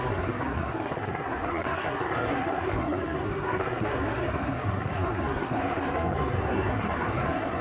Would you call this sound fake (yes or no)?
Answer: yes